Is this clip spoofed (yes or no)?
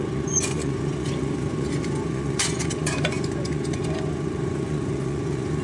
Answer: yes